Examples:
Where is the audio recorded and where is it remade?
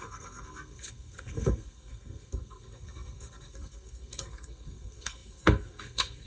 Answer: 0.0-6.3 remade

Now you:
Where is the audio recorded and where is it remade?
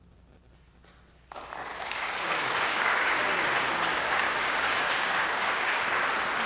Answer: 0.0-1.7 recorded; 1.7-3.1 remade; 3.1-3.9 recorded; 3.9-5.8 remade; 5.8-6.5 recorded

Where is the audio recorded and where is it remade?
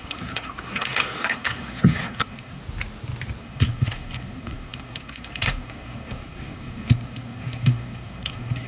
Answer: 0.0-2.6 remade; 2.6-3.4 recorded; 3.4-8.7 remade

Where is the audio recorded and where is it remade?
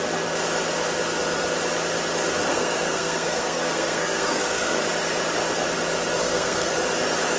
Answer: 0.0-2.5 recorded; 2.5-4.9 remade; 4.9-6.2 recorded; 6.2-6.7 remade; 6.7-7.4 recorded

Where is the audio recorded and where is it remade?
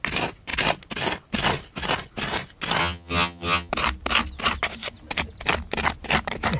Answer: 0.0-2.8 recorded; 2.8-3.7 remade; 3.7-6.6 recorded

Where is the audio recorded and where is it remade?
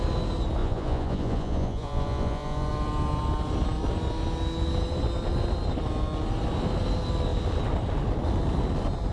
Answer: 0.0-0.6 recorded; 0.6-2.7 remade; 2.7-9.1 recorded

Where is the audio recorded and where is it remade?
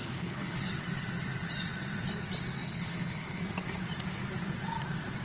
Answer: 0.0-0.7 remade; 0.7-2.6 recorded; 2.6-3.4 remade; 3.4-5.2 recorded